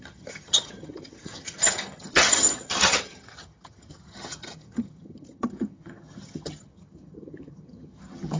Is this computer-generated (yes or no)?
yes